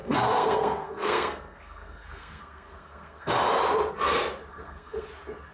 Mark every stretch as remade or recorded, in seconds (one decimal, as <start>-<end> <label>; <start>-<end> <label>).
0.0-3.3 remade; 3.3-4.5 recorded; 4.5-5.1 remade; 5.1-5.5 recorded